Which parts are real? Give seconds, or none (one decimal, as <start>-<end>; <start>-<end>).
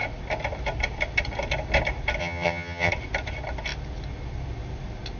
0.0-2.2; 2.9-5.2